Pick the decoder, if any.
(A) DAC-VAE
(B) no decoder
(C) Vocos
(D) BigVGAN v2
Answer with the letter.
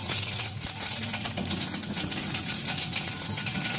C